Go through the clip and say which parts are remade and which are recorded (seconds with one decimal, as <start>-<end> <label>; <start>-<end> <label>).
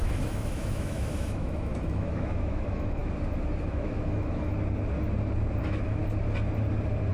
0.0-3.0 remade; 3.0-3.6 recorded; 3.6-4.5 remade; 4.5-5.6 recorded; 5.6-6.0 remade; 6.0-7.1 recorded